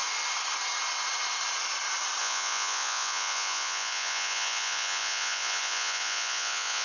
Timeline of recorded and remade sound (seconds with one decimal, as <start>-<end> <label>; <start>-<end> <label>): 0.0-2.2 recorded; 2.2-6.8 remade